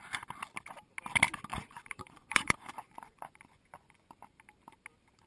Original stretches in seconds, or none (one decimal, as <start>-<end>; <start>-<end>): 0.0-1.5; 4.1-5.3